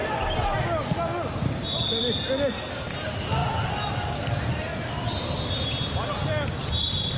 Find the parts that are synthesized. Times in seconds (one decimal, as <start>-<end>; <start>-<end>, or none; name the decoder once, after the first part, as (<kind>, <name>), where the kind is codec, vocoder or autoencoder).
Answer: none